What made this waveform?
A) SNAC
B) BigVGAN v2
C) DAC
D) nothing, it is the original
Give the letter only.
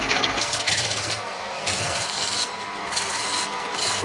A